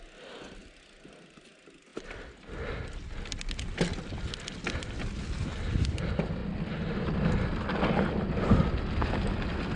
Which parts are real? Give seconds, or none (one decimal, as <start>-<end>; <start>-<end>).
0.0-9.8